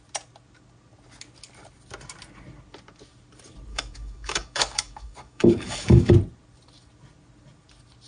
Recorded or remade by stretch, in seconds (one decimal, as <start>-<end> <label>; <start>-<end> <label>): 0.0-3.7 recorded; 3.7-6.1 remade; 6.1-8.1 recorded